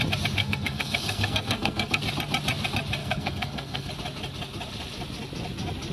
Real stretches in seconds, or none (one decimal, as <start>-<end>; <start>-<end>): 0.0-0.4; 2.0-3.0; 3.9-5.9